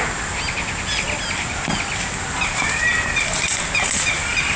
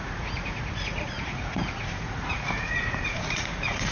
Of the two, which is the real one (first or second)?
first